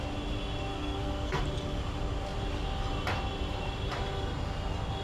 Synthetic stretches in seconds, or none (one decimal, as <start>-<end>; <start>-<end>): 0.7-1.4